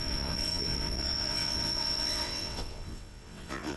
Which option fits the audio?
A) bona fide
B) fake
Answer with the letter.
B